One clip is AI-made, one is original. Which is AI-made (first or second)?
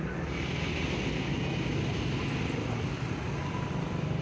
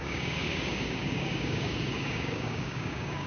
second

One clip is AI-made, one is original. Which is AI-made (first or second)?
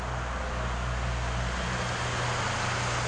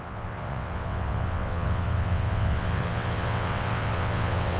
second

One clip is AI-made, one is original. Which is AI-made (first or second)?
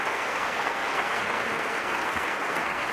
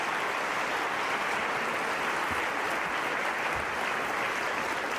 first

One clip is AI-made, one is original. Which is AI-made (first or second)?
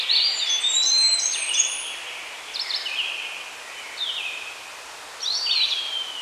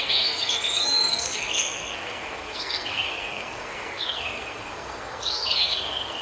second